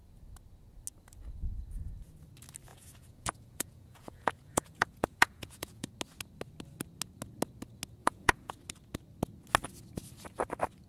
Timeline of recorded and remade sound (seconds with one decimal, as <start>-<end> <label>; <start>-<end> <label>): 0.0-2.7 recorded; 2.7-5.9 remade; 5.9-8.0 recorded; 8.0-8.5 remade; 8.5-10.9 recorded